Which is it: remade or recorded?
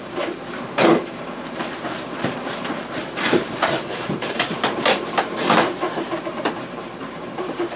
remade